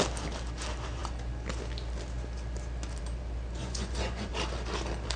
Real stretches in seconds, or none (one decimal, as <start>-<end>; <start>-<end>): 0.0-3.6; 4.3-5.2